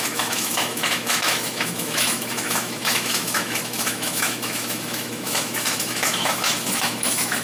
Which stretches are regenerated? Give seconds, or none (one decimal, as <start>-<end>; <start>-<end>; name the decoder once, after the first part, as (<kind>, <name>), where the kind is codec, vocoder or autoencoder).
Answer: 0.0-7.4 (autoencoder, DAC-VAE)

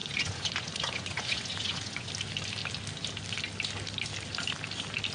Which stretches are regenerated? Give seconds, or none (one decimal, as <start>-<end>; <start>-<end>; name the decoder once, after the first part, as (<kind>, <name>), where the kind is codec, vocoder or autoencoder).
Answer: 0.0-2.1 (vocoder, Vocos)

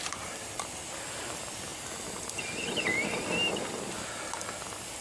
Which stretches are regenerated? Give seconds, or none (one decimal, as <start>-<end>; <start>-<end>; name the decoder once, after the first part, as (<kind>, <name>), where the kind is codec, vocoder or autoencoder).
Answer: none